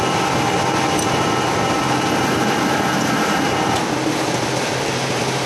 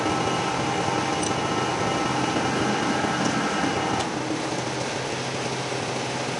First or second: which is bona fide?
second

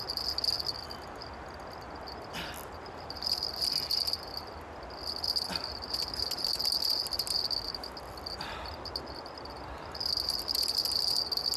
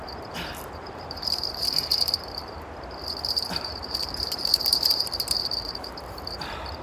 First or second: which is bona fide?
first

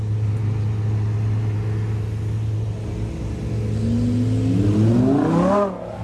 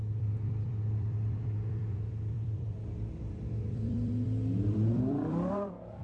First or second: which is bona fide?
first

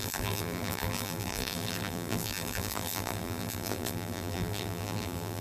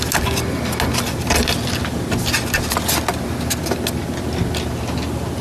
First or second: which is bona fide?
second